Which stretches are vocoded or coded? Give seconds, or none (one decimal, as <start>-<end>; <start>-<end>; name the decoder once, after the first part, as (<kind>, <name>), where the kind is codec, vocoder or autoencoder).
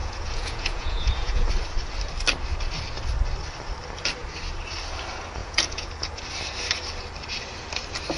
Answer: 0.0-1.5 (vocoder, Vocos); 5.4-5.9